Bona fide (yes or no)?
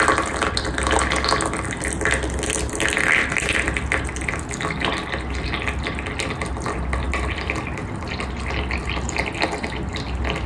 yes